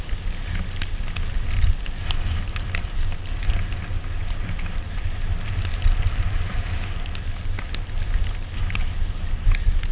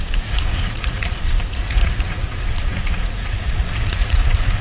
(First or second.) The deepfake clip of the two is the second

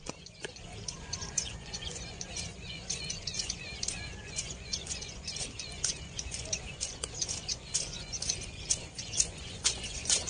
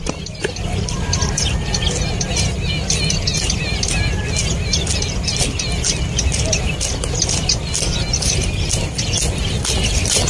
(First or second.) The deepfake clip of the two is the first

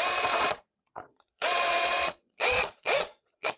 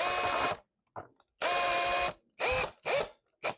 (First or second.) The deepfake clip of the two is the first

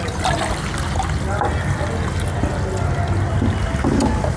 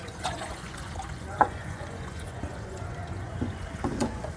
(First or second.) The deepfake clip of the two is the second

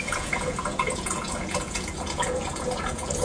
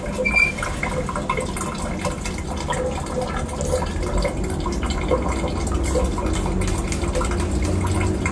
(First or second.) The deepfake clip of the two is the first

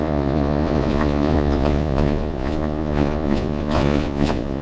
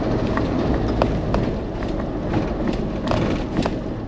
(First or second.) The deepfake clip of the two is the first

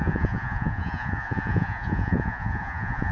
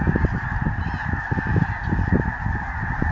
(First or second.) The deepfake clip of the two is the first